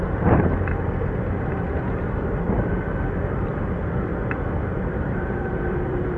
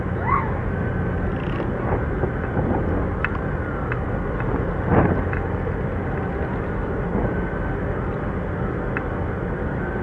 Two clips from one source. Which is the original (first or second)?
second